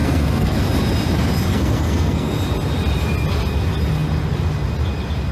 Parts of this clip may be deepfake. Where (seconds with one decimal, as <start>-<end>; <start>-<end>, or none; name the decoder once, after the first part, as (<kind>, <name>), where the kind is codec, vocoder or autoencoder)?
0.0-0.6 (codec, SNAC); 1.5-2.3